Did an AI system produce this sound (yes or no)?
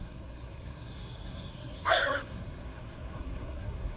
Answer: yes